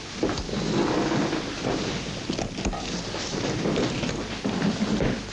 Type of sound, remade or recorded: recorded